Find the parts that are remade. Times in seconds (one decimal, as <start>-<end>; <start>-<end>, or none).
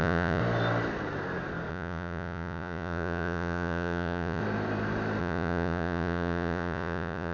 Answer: 0.0-0.4; 1.7-4.4; 5.2-7.3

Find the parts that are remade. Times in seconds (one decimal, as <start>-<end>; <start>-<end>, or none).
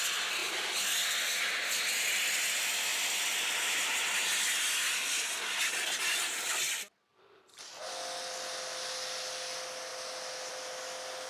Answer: none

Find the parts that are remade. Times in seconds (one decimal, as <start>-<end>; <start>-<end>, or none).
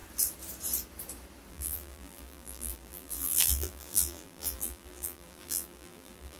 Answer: 1.5-6.4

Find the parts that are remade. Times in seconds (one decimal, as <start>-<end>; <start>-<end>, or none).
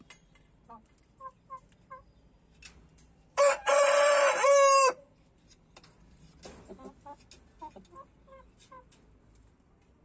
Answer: 2.9-6.2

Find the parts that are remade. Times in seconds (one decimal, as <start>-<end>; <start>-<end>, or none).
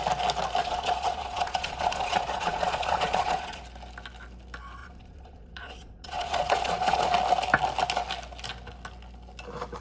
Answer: 0.6-3.6; 4.8-7.1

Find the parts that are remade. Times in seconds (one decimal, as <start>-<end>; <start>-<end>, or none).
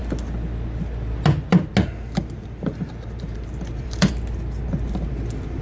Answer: 2.7-4.1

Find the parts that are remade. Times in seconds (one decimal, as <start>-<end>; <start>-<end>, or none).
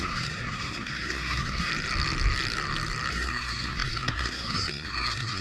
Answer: 0.0-1.7; 3.1-5.4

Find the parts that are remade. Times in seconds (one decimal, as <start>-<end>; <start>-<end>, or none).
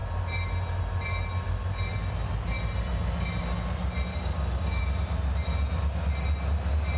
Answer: 4.1-4.8